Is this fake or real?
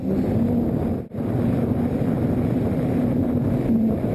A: real